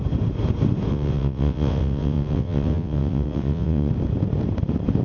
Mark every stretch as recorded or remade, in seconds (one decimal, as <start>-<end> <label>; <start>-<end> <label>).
0.0-0.9 recorded; 0.9-3.9 remade; 3.9-5.0 recorded